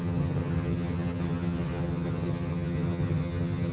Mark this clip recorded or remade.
remade